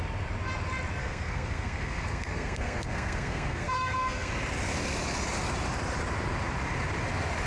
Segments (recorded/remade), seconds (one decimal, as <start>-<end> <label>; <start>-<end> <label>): 0.0-1.0 recorded; 1.0-4.3 remade; 4.3-7.5 recorded